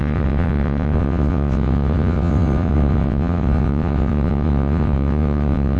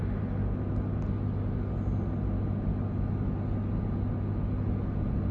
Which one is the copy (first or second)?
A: first